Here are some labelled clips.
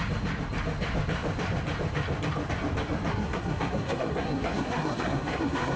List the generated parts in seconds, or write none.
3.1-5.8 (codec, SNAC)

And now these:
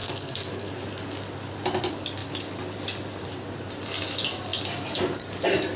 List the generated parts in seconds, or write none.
0.0-0.7 (codec, SNAC)

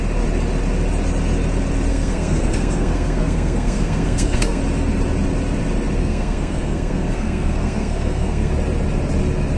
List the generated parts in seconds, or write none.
1.9-4.6 (codec, SNAC); 6.0-8.5

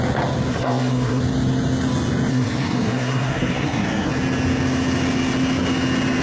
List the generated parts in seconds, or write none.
0.5-1.2 (codec, SNAC); 2.3-4.1

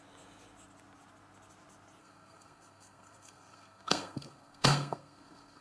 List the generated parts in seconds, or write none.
2.0-5.6 (codec, SNAC)

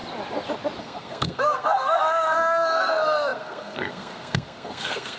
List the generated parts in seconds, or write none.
0.8-5.2 (codec, SNAC)